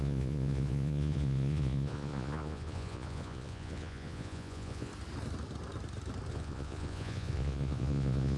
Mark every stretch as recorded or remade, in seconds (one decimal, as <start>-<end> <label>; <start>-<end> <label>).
0.0-4.9 remade; 4.9-6.3 recorded; 6.3-8.4 remade